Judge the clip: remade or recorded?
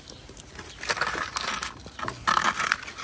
recorded